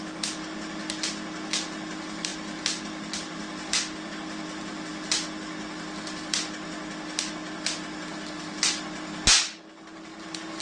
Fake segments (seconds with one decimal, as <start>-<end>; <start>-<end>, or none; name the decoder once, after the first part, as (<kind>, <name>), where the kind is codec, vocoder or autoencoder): none